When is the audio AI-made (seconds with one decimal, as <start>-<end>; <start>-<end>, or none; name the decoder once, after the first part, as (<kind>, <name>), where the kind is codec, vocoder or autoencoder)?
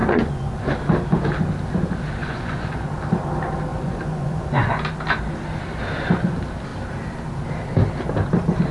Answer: 0.0-0.7 (vocoder, Vocos); 2.2-2.9; 3.7-4.7